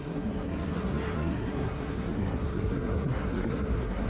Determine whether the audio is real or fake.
fake